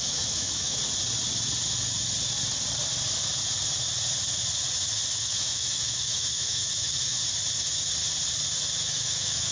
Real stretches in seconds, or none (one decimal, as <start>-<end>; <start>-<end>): 0.8-5.1; 7.2-8.8